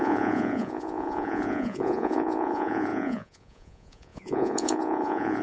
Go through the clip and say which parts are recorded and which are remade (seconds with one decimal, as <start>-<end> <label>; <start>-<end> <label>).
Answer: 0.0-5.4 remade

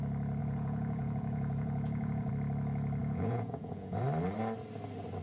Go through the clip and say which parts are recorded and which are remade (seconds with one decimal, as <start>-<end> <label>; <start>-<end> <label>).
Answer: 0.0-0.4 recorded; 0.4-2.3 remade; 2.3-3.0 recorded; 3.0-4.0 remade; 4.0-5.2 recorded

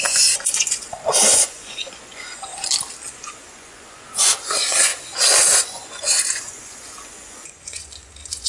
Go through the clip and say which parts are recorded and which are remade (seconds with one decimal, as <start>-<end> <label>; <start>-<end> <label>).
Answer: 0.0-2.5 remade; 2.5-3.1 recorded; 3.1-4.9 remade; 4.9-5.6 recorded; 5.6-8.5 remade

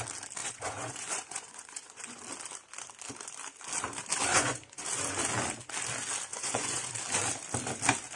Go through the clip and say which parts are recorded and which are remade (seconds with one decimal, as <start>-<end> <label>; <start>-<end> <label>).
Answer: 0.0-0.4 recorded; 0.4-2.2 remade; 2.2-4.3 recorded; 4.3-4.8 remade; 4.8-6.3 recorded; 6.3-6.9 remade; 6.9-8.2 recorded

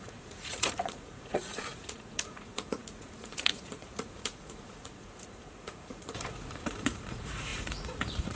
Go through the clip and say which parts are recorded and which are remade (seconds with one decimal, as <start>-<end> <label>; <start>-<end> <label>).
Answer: 0.0-8.4 remade

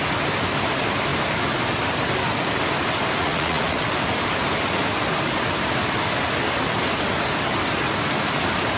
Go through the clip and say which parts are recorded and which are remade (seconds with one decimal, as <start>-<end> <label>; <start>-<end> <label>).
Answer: 0.0-3.2 recorded; 3.2-3.8 remade; 3.8-8.8 recorded